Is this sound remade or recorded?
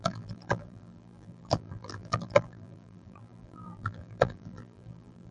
remade